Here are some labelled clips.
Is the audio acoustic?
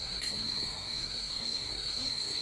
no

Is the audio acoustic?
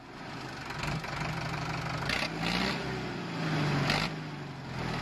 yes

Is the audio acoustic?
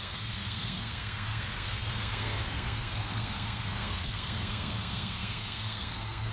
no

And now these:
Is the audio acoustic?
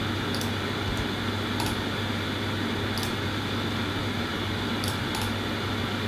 yes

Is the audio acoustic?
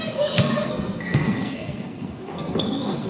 no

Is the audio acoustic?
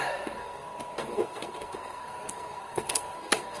no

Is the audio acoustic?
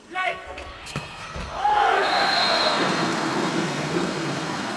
no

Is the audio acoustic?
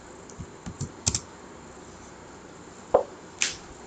yes